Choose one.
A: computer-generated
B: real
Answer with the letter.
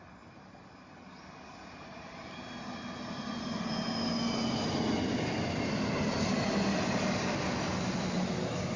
B